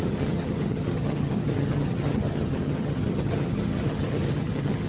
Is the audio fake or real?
fake